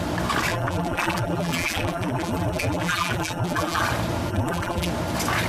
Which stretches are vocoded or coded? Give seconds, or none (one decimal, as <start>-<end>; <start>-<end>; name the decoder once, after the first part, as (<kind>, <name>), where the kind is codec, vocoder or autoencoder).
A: 0.5-3.8 (vocoder, BigVGAN v2); 4.3-4.9